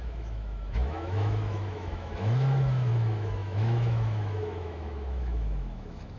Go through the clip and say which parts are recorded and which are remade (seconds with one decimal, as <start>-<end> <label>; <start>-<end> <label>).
0.0-6.2 remade